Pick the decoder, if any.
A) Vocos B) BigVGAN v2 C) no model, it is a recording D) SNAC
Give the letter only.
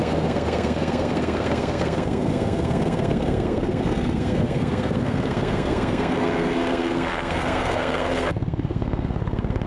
D